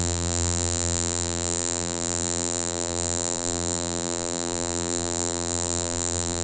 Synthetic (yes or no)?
yes